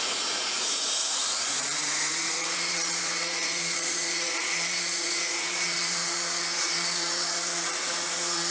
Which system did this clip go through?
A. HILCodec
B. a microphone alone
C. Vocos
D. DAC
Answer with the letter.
C